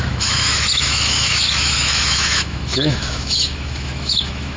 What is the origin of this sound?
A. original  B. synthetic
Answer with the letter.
B